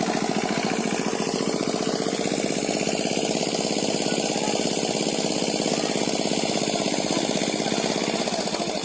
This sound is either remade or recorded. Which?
recorded